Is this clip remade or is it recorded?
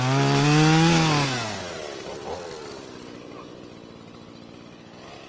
recorded